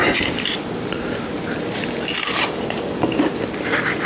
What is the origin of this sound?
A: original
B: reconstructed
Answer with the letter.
B